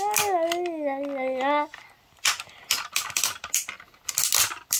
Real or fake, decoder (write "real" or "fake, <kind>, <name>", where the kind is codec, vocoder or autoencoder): real